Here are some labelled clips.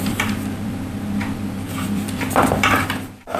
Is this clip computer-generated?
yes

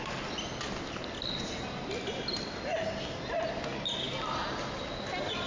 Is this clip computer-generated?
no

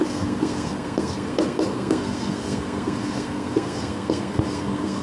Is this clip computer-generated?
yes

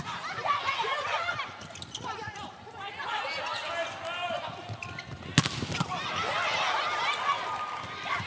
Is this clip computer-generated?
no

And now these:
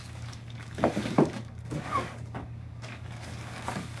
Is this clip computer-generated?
yes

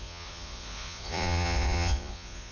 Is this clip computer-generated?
yes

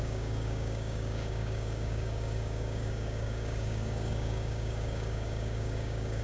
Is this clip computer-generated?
yes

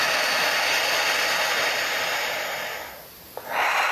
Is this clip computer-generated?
no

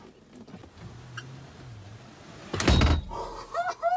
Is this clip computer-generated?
no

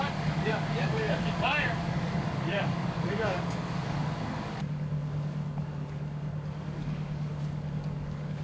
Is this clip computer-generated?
yes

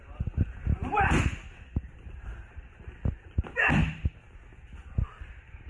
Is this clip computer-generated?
no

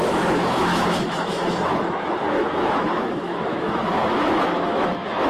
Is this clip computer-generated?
yes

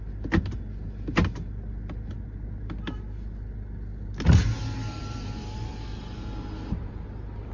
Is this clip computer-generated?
no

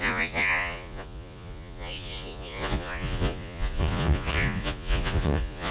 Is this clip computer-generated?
yes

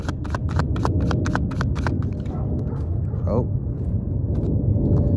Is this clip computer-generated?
no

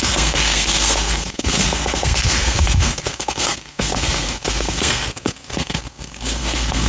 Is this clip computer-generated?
yes